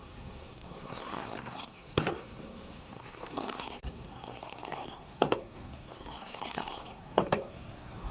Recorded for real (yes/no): no